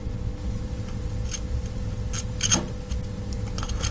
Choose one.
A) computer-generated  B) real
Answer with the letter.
B